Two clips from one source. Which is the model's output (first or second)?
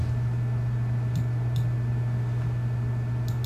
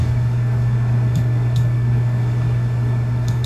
second